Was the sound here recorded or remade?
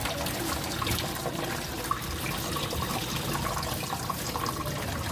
recorded